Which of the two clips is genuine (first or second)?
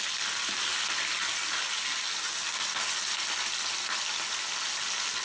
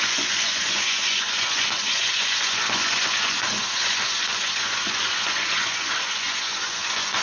first